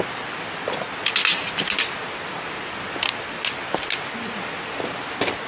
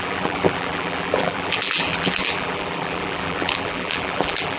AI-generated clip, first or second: second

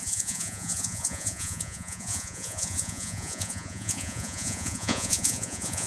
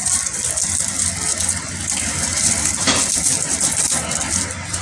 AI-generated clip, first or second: first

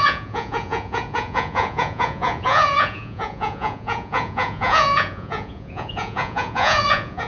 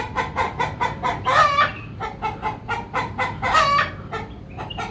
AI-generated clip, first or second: first